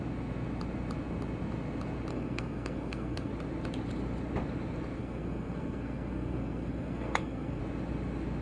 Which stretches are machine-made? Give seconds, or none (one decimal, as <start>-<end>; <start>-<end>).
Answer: 2.1-3.3; 5.0-7.6